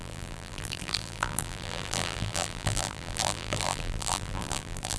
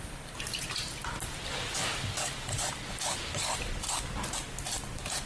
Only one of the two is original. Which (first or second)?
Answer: second